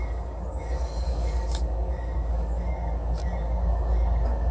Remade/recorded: remade